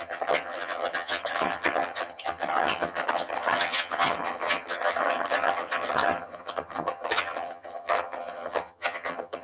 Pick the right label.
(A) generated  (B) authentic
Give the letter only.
A